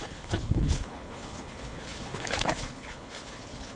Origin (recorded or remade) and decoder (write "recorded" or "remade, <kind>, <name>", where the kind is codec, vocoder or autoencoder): remade, codec, HILCodec